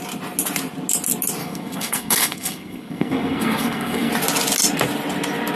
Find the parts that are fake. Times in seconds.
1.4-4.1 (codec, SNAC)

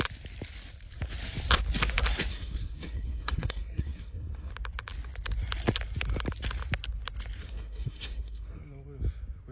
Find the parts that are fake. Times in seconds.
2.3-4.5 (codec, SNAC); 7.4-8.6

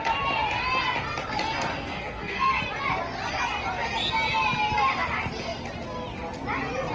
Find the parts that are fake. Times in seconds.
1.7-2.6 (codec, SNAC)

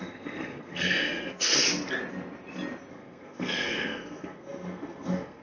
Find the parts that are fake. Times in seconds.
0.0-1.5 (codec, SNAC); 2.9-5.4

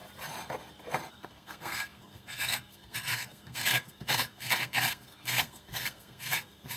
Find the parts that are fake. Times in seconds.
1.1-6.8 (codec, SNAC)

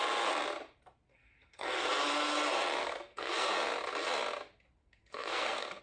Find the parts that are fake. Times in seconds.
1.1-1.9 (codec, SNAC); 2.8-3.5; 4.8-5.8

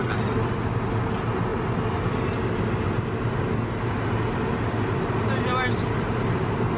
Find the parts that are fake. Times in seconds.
none

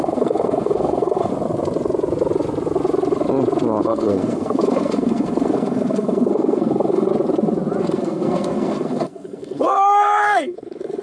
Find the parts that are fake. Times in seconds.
0.0-1.3 (codec, SNAC); 3.8-7.1; 7.8-11.0